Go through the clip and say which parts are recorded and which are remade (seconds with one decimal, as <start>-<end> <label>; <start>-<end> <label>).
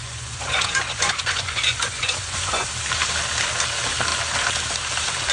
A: 0.0-2.7 remade; 2.7-5.3 recorded